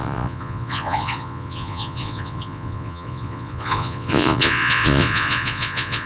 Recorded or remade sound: remade